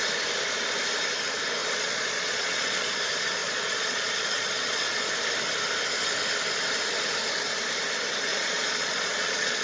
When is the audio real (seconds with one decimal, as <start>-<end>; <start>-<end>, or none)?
0.0-1.6; 3.0-3.4; 5.1-8.3